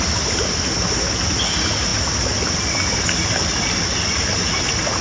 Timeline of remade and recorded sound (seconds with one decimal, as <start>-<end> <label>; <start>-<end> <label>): 0.0-5.0 recorded